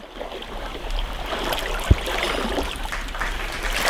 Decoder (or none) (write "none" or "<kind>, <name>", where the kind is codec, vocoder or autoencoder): none